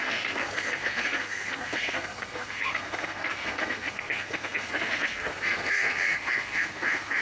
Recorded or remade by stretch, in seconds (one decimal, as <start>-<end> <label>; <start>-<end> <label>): 0.0-7.2 remade